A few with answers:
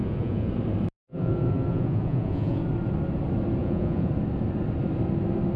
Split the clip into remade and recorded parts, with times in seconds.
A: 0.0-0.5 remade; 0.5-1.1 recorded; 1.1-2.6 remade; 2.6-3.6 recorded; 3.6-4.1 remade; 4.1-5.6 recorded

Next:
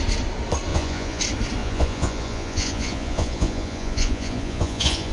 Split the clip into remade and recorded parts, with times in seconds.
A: 0.0-0.7 recorded; 0.7-1.2 remade; 1.2-1.6 recorded; 1.6-5.1 remade

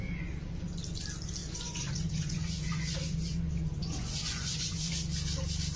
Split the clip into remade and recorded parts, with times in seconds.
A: 0.0-1.4 recorded; 1.4-4.9 remade; 4.9-5.8 recorded

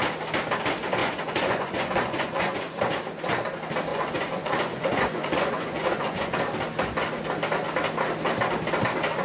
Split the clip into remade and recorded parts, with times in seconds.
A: 0.0-1.0 recorded; 1.0-2.8 remade; 2.8-3.9 recorded; 3.9-6.4 remade; 6.4-9.2 recorded

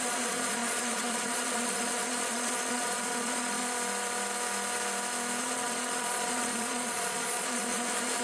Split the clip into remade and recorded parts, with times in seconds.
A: 0.0-3.6 remade; 3.6-5.4 recorded; 5.4-8.2 remade

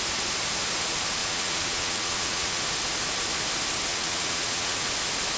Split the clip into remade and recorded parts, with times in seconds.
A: 0.0-1.2 recorded; 1.2-2.6 remade; 2.6-3.9 recorded; 3.9-4.9 remade; 4.9-5.4 recorded